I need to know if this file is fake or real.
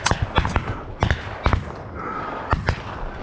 real